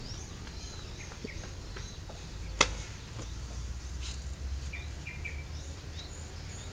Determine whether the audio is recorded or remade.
recorded